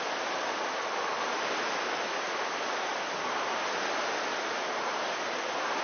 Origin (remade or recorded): recorded